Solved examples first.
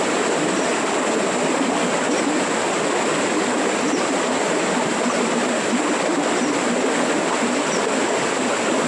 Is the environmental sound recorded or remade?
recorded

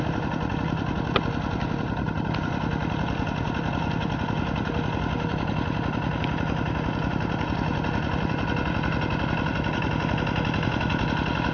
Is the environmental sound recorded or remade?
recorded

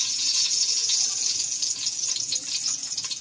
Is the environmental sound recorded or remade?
remade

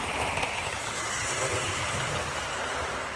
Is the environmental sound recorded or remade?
remade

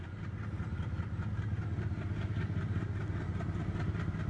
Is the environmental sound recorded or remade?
recorded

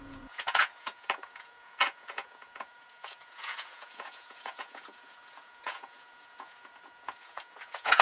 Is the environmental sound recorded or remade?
remade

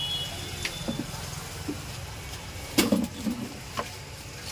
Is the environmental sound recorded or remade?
recorded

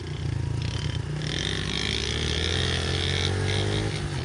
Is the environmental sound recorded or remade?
recorded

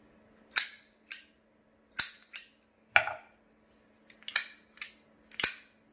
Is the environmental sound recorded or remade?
recorded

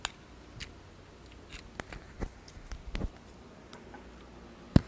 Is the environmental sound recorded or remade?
recorded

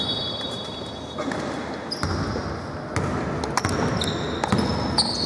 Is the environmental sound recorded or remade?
recorded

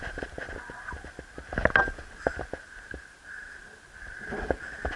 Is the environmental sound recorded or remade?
recorded